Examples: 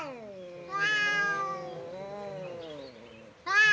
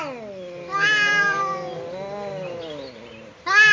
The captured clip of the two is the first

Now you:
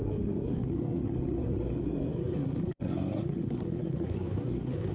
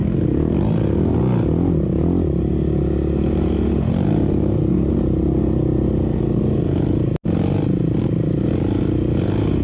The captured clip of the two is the second